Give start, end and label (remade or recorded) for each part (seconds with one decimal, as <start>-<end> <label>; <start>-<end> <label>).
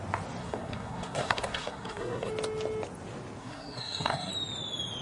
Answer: 0.0-0.4 recorded; 0.4-2.3 remade; 2.3-3.4 recorded; 3.4-4.3 remade; 4.3-5.0 recorded